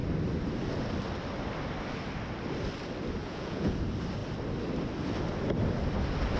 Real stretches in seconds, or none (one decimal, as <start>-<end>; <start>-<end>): 0.0-3.2; 3.7-6.4